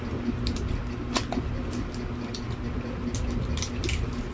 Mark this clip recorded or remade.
recorded